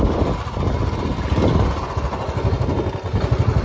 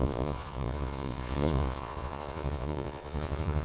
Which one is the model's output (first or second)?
second